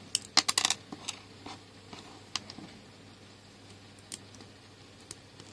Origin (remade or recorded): recorded